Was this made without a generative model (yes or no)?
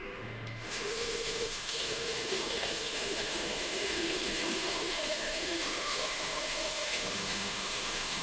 no